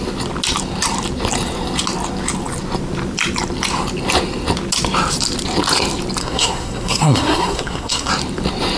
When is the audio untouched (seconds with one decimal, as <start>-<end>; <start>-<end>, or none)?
0.0-6.2; 8.1-8.8